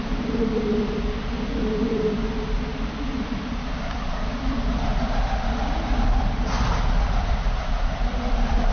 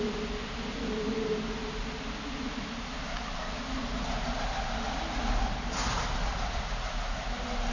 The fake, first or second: first